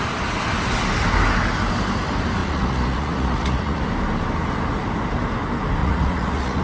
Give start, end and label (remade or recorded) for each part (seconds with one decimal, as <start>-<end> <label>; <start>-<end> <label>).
0.0-2.4 recorded; 2.4-3.8 remade; 3.8-5.8 recorded; 5.8-6.6 remade